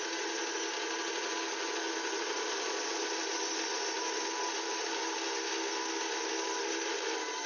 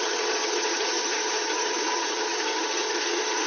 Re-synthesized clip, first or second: second